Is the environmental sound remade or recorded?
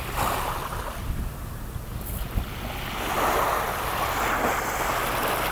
recorded